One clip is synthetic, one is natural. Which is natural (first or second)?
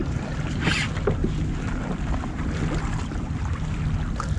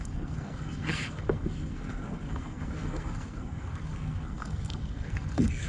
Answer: first